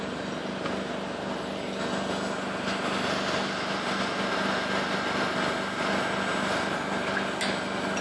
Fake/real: real